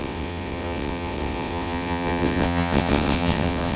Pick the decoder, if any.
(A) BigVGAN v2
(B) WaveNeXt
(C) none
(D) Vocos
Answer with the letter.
B